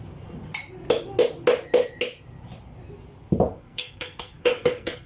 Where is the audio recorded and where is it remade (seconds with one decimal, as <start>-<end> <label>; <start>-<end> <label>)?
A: 0.0-3.5 recorded; 3.5-5.1 remade